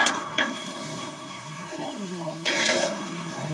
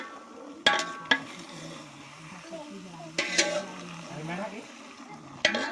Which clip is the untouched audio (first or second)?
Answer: second